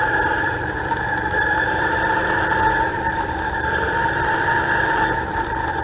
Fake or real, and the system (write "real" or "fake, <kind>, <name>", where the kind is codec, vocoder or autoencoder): fake, vocoder, BigVGAN v2